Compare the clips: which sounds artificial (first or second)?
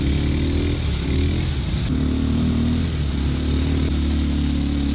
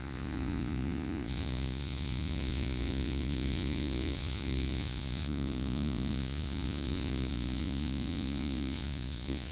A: second